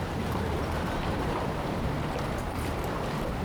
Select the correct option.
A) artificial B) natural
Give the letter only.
A